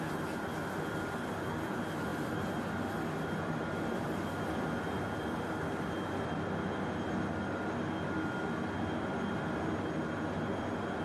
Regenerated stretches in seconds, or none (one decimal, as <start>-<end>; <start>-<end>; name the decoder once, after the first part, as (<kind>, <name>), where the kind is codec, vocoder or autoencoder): 2.1-5.5 (vocoder, BigVGAN v2)